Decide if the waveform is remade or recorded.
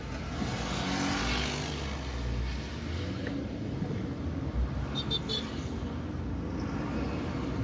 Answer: recorded